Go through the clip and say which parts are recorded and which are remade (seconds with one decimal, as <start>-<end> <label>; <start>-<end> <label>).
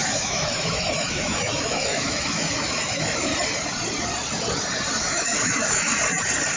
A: 0.0-3.3 remade; 3.3-5.0 recorded; 5.0-5.9 remade; 5.9-6.6 recorded